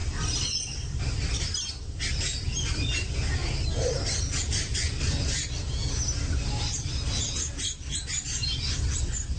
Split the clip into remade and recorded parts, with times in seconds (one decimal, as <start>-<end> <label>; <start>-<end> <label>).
0.0-9.4 recorded